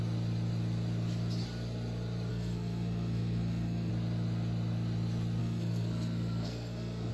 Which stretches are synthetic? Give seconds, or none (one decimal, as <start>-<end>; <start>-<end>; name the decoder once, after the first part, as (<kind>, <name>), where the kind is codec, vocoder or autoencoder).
2.3-3.9 (codec, SNAC); 5.4-7.1